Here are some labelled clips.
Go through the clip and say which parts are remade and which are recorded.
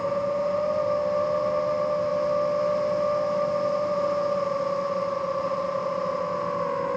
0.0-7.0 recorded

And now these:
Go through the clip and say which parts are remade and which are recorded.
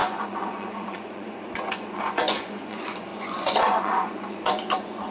0.0-5.1 remade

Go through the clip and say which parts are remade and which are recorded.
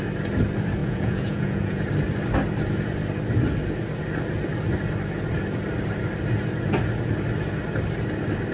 0.0-0.8 recorded; 0.8-1.9 remade; 1.9-8.5 recorded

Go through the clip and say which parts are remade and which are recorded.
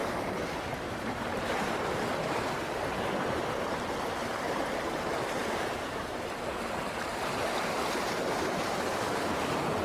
0.0-5.4 recorded; 5.4-6.1 remade; 6.1-9.8 recorded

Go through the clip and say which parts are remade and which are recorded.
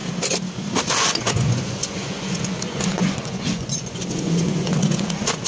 0.0-1.0 recorded; 1.0-5.5 remade